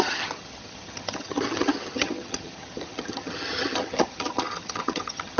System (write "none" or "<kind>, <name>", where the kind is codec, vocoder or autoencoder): vocoder, HiFi-GAN